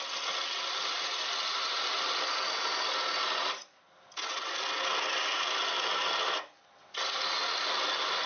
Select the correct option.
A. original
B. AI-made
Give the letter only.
A